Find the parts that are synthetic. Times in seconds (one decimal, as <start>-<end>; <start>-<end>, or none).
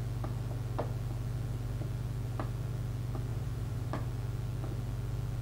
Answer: 3.3-4.1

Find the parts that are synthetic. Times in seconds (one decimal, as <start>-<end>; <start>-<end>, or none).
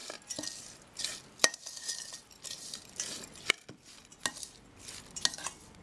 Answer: none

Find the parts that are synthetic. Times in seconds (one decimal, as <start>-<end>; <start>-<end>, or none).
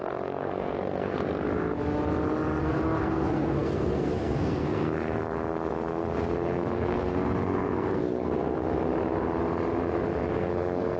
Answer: 0.0-1.2; 2.6-8.6; 10.3-11.0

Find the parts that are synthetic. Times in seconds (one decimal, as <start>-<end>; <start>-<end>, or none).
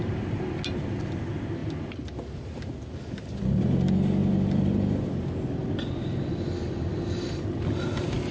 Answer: none